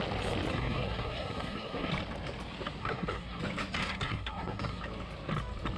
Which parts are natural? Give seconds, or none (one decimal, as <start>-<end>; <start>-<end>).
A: 0.0-0.5; 1.9-2.8; 3.4-3.8; 4.8-5.8